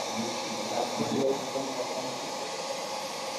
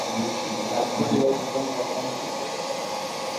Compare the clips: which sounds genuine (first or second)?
second